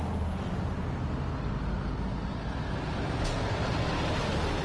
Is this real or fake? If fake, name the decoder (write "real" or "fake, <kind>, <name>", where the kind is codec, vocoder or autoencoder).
real